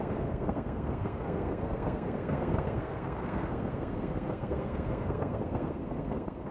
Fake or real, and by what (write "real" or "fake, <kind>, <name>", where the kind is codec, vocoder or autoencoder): fake, codec, SNAC